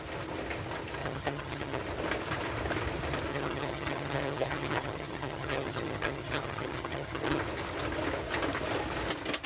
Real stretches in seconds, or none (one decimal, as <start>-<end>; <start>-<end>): 0.0-1.0; 1.8-3.3; 7.4-9.5